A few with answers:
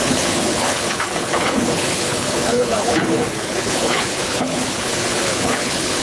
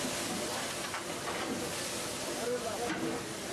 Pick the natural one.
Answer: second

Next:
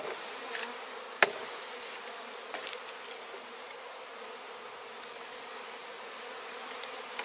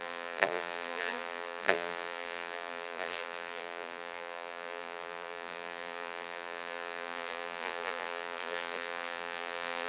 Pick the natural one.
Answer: first